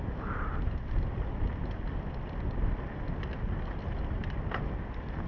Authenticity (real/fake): real